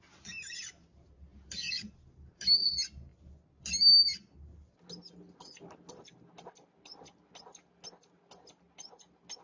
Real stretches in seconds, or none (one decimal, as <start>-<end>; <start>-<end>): 0.0-9.4

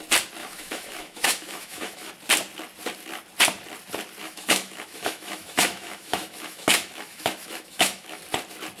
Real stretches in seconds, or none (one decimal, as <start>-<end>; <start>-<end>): 0.0-0.4; 2.1-4.2; 8.2-8.8

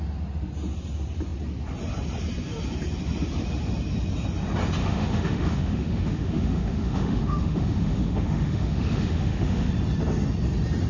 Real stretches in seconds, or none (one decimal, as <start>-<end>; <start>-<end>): 0.0-4.8; 9.7-10.9

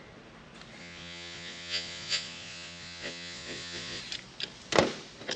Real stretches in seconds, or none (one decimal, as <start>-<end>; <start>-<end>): 0.0-0.8; 4.0-5.4